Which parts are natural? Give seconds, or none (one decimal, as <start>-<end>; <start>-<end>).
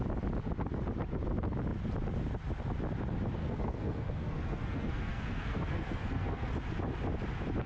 0.0-3.4; 6.5-7.7